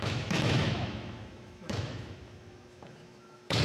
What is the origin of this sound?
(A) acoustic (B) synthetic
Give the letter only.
B